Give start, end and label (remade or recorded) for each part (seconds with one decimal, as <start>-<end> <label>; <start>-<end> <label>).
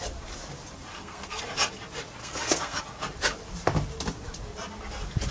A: 0.0-0.9 recorded; 0.9-1.4 remade; 1.4-2.2 recorded; 2.2-2.8 remade; 2.8-5.3 recorded